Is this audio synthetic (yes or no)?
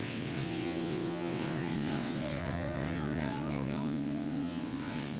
yes